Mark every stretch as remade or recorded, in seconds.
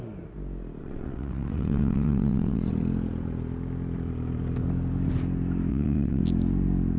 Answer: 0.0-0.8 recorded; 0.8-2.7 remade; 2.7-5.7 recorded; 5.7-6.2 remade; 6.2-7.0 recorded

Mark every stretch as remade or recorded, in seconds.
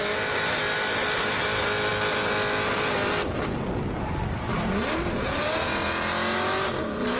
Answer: 0.0-7.2 recorded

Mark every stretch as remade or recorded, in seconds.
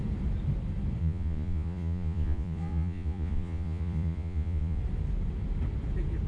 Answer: 0.0-1.0 recorded; 1.0-4.8 remade; 4.8-6.3 recorded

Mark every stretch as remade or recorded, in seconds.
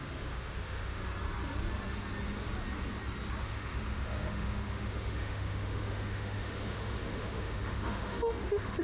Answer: 0.0-1.0 remade; 1.0-3.4 recorded; 3.4-8.8 remade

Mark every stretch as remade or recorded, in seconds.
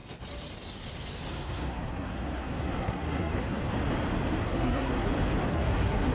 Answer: 0.0-1.3 recorded; 1.3-3.6 remade; 3.6-4.4 recorded; 4.4-5.1 remade; 5.1-5.5 recorded; 5.5-6.1 remade